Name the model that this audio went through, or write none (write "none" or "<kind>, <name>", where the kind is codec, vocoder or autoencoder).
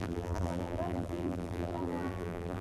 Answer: vocoder, BigVGAN v2